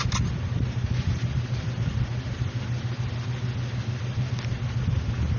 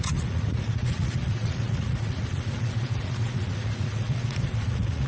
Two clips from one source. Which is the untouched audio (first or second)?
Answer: first